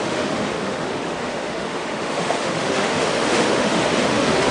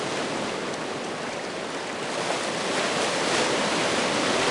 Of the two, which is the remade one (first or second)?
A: first